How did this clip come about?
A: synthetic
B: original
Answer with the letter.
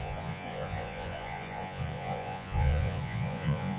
A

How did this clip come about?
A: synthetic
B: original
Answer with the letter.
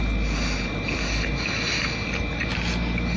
B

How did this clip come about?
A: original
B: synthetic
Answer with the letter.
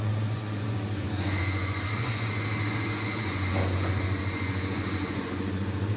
B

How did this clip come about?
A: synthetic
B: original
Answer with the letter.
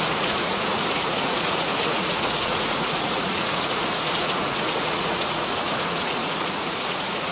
A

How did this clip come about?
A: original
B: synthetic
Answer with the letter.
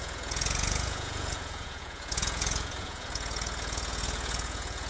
B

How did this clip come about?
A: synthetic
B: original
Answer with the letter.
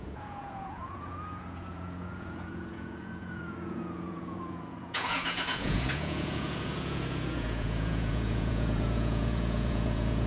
A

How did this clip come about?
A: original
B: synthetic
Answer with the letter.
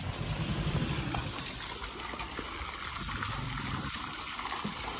A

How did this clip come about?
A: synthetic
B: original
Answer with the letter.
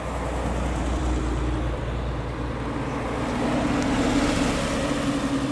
B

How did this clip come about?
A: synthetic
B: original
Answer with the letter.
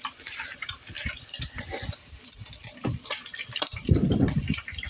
B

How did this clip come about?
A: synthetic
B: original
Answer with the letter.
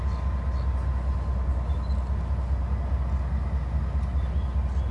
B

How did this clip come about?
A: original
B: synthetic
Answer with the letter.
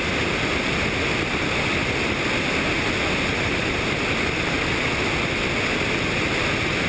A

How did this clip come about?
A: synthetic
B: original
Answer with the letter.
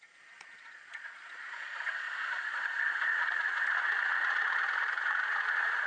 A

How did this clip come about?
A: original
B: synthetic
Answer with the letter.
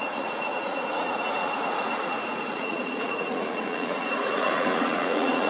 B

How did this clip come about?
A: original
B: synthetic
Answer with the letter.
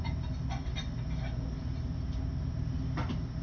A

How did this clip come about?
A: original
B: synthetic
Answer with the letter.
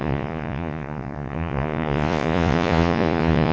B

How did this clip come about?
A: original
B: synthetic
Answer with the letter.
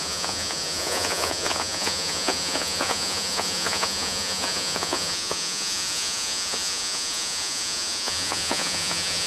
B